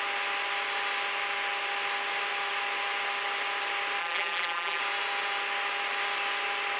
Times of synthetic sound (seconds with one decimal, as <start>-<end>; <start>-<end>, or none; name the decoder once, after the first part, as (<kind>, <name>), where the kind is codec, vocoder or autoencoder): 4.0-4.8 (vocoder, BigVGAN v2)